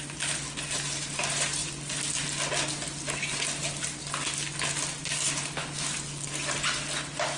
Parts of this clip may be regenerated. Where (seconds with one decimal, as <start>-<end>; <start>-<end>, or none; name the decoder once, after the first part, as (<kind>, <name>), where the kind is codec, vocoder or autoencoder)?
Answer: none